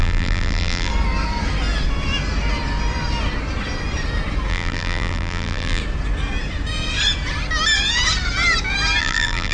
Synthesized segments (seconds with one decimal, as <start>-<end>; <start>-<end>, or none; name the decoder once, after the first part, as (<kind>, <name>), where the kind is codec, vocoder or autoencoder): 0.0-0.9 (vocoder, BigVGAN v2); 4.5-5.8; 9.0-9.5